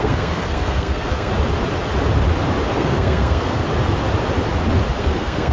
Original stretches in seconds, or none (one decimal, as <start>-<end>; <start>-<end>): 1.3-2.7; 3.6-5.0